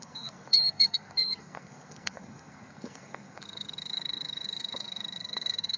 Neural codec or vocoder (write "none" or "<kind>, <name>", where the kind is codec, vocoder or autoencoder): codec, SNAC